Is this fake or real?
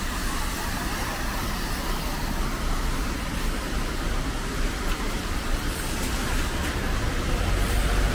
real